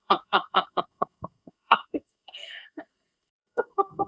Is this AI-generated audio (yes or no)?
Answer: yes